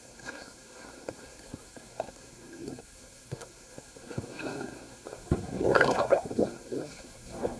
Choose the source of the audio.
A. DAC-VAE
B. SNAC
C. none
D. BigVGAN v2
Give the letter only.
B